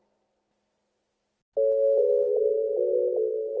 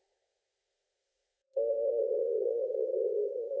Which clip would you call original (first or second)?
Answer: first